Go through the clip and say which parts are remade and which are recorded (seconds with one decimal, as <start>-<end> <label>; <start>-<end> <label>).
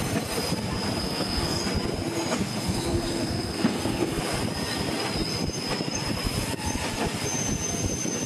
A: 0.0-1.0 recorded; 1.0-1.6 remade; 1.6-2.5 recorded; 2.5-4.2 remade; 4.2-8.3 recorded